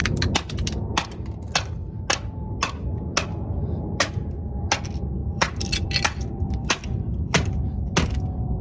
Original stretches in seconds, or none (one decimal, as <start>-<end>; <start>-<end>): 0.0-5.2; 7.6-8.6